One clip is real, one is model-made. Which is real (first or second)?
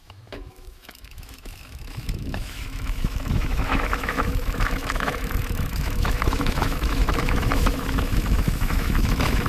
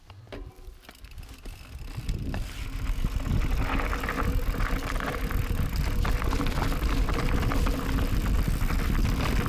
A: second